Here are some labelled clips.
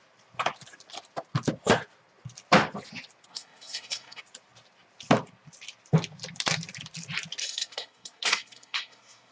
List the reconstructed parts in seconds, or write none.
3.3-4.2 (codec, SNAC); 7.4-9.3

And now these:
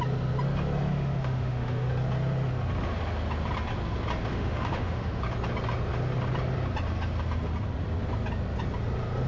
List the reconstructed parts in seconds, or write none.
0.9-1.9 (autoencoder, DAC-VAE); 4.3-5.2

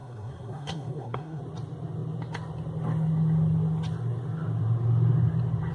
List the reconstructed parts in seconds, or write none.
0.0-1.4 (codec, SNAC)